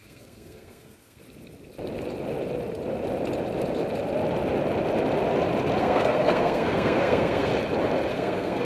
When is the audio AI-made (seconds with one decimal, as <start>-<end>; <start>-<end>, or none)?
0.0-1.2; 5.8-7.5; 8.1-8.6